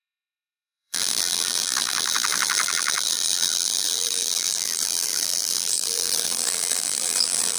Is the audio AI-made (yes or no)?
yes